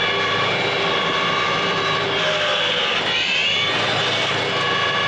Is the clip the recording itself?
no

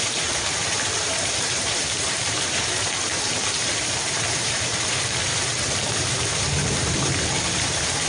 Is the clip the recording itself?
no